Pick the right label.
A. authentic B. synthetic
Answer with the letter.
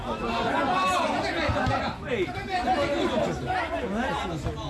A